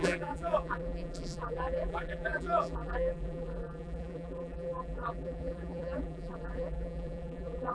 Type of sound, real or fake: fake